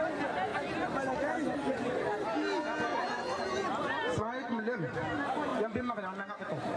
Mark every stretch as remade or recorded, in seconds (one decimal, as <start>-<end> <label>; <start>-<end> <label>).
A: 0.0-2.9 recorded; 2.9-3.4 remade; 3.4-6.8 recorded

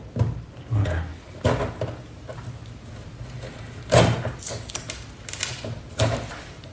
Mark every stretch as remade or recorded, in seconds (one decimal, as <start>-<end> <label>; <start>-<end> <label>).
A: 0.0-6.7 recorded

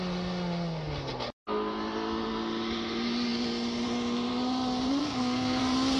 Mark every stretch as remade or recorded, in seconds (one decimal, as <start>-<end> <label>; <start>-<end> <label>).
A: 0.0-5.0 recorded; 5.0-5.6 remade; 5.6-6.0 recorded

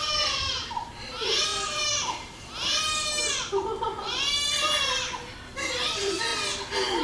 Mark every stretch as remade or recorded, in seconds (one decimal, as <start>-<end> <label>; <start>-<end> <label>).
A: 0.0-1.5 remade; 1.5-4.9 recorded; 4.9-6.3 remade; 6.3-7.0 recorded